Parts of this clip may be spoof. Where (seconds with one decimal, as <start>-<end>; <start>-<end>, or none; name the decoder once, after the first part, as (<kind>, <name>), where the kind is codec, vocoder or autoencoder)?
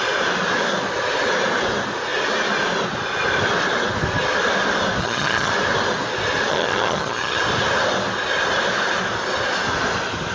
5.0-5.5 (vocoder, HiFi-GAN); 6.5-7.4